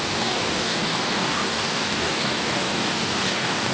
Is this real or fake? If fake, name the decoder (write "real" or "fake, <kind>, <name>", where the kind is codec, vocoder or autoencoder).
fake, codec, DAC